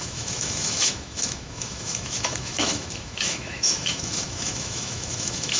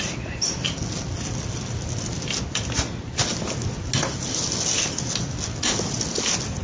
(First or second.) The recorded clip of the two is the second